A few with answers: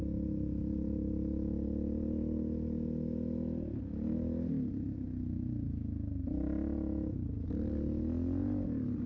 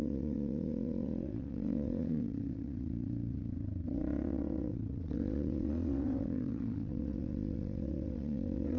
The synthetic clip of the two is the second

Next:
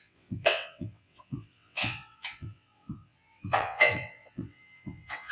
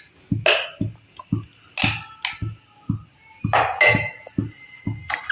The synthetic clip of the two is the first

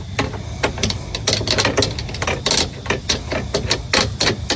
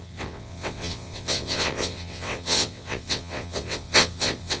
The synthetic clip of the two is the second